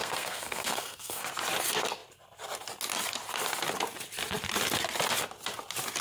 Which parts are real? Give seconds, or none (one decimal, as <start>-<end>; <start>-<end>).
1.3-6.0

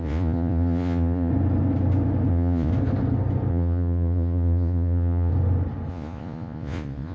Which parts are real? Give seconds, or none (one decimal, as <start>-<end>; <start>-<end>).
1.3-2.3; 2.7-3.5; 5.3-5.9

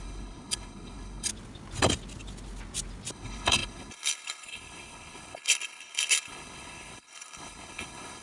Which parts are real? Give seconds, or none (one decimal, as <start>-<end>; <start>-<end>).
1.3-3.1

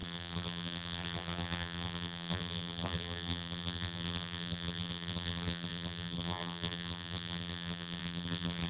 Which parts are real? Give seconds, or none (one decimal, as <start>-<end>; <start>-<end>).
none

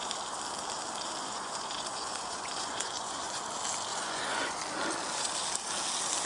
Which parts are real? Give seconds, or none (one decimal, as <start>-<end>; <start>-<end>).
0.0-1.2; 3.4-3.9; 4.6-6.3

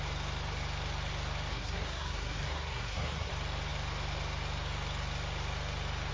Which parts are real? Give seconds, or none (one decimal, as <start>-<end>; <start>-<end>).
0.0-1.5; 3.3-6.1

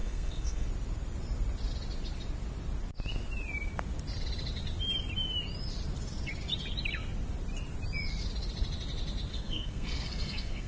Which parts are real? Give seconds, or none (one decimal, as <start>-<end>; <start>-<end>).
0.7-9.3